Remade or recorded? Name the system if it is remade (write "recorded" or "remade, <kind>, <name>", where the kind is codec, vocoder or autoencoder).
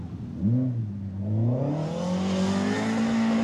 recorded